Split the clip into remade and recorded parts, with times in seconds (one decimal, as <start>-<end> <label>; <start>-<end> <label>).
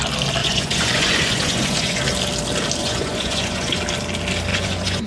0.0-0.4 recorded; 0.4-2.0 remade; 2.0-2.8 recorded; 2.8-3.8 remade; 3.8-4.5 recorded; 4.5-5.1 remade